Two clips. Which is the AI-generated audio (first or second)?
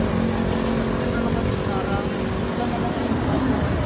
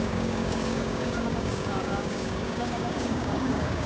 second